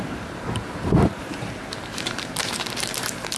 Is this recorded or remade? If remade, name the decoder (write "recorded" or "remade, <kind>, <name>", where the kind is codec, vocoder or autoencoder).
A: remade, vocoder, BigVGAN v2